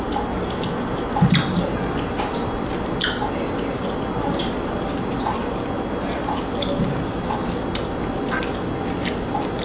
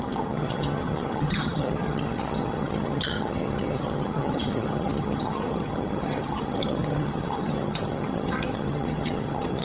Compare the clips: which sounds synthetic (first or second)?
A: second